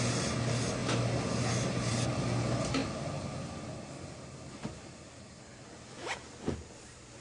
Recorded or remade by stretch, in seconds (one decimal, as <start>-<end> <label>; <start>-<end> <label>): 0.0-7.2 recorded